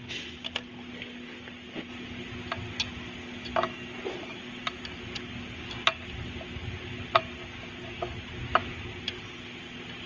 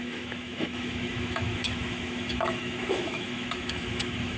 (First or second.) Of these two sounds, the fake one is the second